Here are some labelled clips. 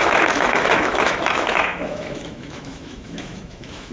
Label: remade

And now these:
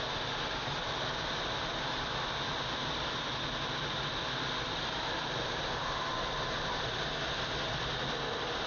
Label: recorded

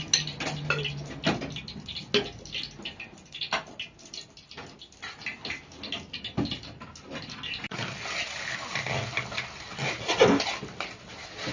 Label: recorded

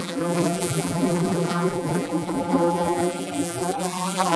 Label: remade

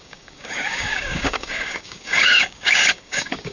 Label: remade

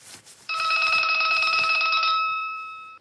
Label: remade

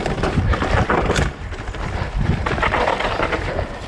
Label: remade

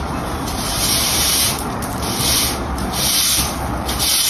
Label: remade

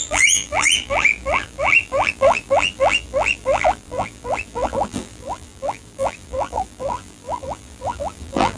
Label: remade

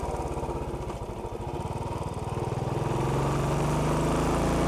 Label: recorded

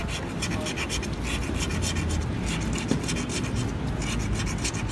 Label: recorded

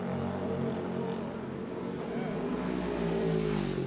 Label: recorded